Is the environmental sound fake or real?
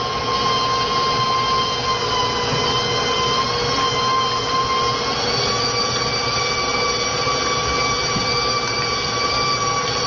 real